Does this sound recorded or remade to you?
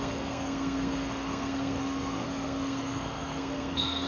remade